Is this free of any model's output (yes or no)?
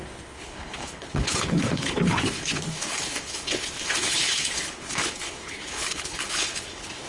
no